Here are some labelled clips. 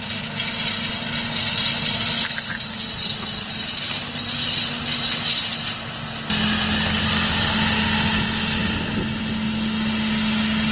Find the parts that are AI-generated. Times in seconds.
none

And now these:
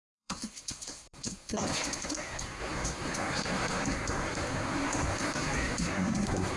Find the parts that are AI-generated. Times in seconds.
0.0-6.6 (codec, SNAC)

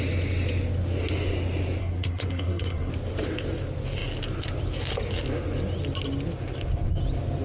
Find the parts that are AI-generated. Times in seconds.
1.8-2.9 (codec, SNAC)

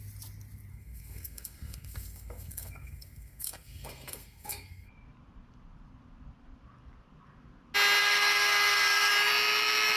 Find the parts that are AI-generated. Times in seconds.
0.7-4.9 (codec, SNAC); 8.0-9.1